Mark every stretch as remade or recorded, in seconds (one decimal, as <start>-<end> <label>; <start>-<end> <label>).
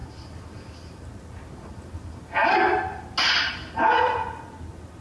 0.0-5.0 recorded